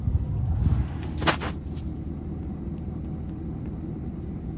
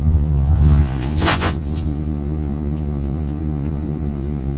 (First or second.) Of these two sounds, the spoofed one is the second